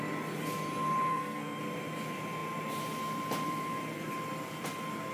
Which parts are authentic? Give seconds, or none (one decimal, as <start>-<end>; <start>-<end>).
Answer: 0.0-1.1; 1.6-5.1